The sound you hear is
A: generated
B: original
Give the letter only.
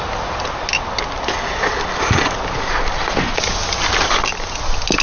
B